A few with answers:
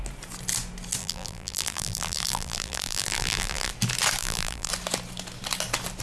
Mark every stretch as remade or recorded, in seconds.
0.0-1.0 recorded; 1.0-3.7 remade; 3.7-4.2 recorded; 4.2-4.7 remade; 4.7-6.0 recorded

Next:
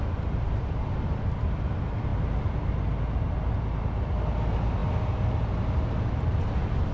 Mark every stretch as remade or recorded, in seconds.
0.0-6.9 recorded